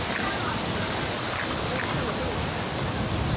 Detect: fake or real real